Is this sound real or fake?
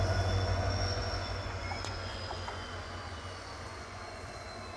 fake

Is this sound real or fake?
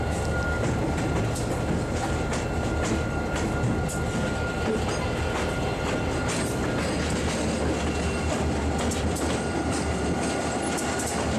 real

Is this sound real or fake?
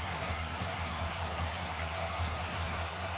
fake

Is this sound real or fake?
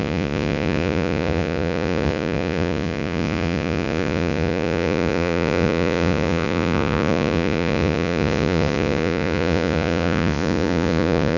fake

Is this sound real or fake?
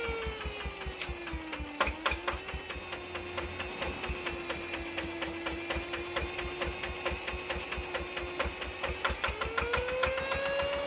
real